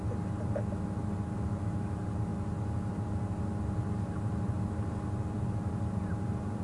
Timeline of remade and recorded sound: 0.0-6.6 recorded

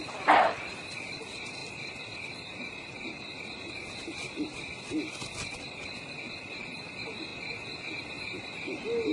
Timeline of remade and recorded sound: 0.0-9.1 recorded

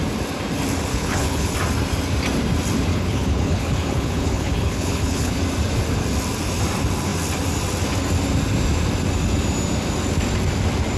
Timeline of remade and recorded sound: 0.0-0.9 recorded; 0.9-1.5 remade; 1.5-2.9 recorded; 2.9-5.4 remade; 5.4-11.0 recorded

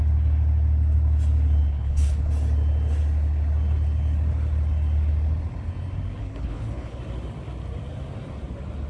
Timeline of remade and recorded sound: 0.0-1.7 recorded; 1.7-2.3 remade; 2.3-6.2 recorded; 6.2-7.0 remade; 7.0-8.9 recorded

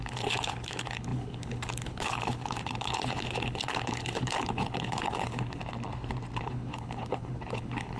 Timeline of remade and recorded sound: 0.0-5.6 remade; 5.6-6.4 recorded; 6.4-8.0 remade

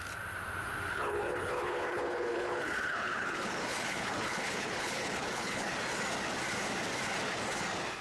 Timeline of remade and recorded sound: 0.0-0.9 recorded; 0.9-5.7 remade; 5.7-8.0 recorded